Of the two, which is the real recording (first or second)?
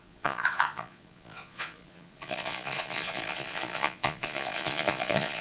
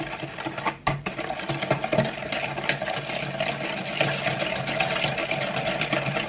second